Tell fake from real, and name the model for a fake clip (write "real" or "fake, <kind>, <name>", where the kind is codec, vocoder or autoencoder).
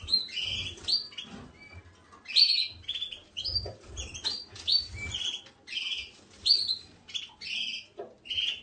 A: real